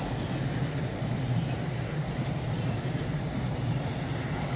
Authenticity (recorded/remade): recorded